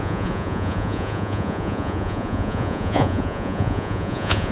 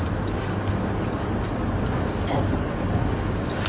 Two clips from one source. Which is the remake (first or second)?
first